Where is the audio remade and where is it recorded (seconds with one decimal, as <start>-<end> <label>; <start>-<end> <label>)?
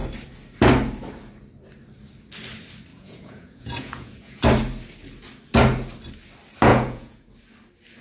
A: 0.0-2.9 recorded; 2.9-4.4 remade; 4.4-6.7 recorded; 6.7-7.3 remade; 7.3-8.0 recorded